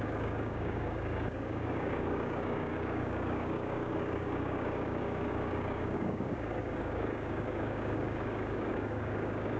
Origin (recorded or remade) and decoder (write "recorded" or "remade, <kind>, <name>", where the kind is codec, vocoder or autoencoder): remade, codec, DAC